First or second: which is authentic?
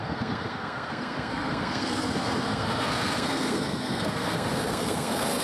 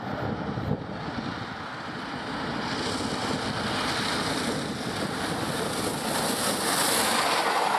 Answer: second